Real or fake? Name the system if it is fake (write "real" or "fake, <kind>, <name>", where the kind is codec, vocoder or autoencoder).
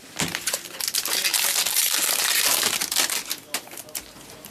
real